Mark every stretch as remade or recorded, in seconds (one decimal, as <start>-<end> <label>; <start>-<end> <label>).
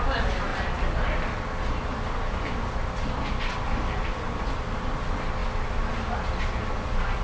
0.0-7.2 recorded